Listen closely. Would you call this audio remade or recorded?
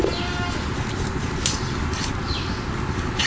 recorded